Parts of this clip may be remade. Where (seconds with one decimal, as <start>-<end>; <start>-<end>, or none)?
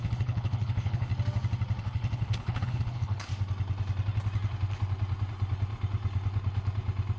0.0-1.1; 1.8-3.3